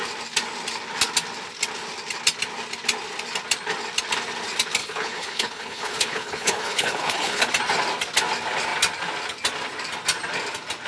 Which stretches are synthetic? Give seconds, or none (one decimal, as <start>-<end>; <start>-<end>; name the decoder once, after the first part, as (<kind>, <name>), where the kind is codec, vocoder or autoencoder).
4.8-7.5 (codec, HILCodec)